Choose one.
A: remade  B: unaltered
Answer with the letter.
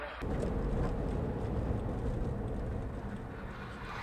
B